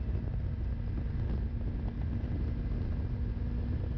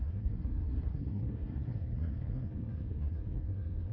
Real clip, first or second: first